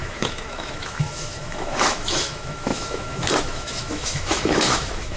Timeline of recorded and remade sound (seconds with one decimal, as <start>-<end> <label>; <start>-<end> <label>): 0.0-5.2 remade